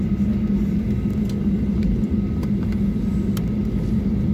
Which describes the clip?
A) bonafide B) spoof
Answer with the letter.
A